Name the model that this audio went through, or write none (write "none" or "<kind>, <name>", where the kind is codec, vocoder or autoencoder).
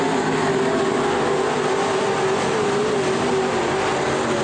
none